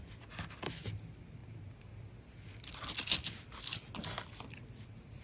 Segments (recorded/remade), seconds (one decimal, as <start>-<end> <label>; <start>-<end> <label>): 0.0-5.2 recorded